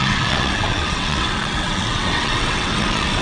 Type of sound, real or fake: fake